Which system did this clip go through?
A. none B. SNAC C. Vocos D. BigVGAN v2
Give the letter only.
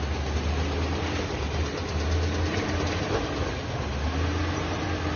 A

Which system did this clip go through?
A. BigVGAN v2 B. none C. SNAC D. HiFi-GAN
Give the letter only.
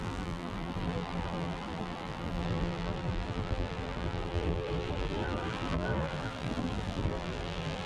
A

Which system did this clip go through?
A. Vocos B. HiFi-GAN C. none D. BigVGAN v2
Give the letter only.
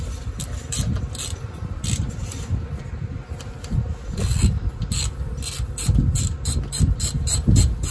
C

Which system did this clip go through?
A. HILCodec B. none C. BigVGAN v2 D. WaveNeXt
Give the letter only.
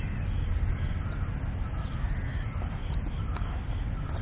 B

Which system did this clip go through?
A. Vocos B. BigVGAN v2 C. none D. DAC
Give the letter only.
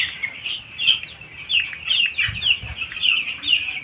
C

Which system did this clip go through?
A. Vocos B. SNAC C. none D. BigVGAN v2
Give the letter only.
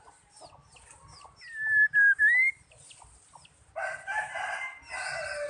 C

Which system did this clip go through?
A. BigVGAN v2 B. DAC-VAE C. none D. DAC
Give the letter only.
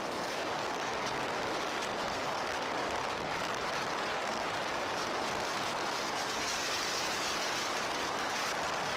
D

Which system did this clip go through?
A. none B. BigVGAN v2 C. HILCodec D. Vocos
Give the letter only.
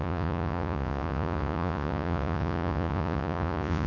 D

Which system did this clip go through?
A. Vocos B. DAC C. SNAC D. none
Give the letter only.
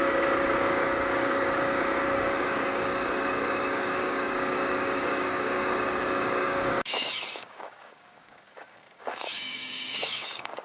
B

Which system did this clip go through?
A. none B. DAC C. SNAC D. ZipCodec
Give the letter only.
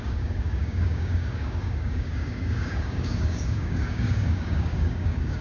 B